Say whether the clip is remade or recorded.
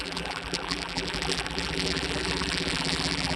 remade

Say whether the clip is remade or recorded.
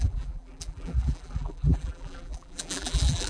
remade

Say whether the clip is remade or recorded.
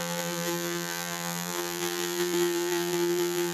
remade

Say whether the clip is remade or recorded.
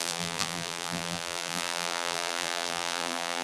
remade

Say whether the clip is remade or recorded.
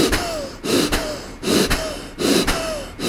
recorded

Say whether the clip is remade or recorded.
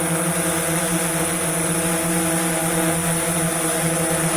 recorded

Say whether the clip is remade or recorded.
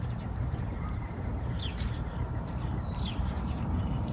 remade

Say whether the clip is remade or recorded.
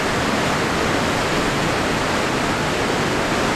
recorded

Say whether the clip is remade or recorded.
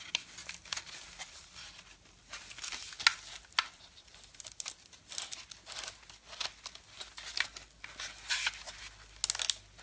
recorded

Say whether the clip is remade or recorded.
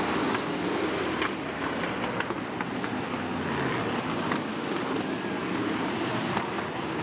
remade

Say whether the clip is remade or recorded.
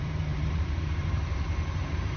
remade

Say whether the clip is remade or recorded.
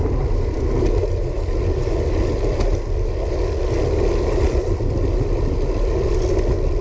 recorded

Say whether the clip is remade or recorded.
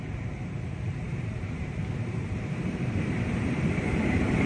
remade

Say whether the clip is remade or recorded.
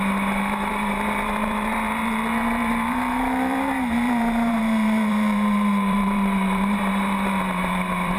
remade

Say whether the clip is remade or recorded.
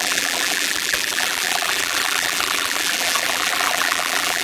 remade